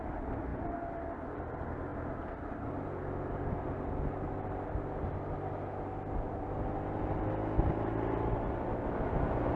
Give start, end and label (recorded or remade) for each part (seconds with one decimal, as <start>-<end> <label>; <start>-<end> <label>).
0.0-9.6 recorded